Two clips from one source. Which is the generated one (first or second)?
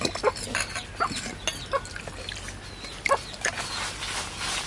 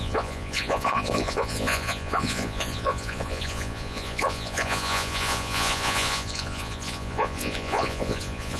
second